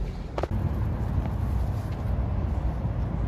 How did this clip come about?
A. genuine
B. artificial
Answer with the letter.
A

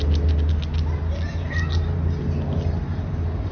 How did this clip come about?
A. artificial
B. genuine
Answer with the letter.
B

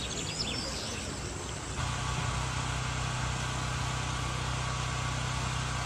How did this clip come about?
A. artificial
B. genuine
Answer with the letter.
B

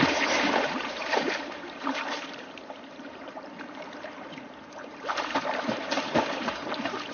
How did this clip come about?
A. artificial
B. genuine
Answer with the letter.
A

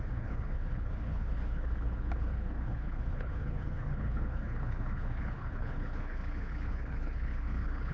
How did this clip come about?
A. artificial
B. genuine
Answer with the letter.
A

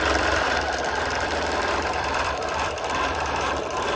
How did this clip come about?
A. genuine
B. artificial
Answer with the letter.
B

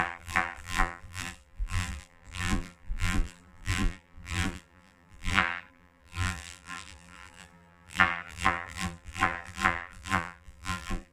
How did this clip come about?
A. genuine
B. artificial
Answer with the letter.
B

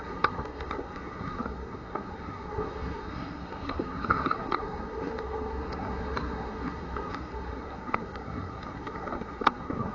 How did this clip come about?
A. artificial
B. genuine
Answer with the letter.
A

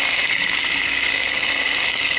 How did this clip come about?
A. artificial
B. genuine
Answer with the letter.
A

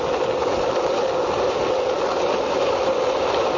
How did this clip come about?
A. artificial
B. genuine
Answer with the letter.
B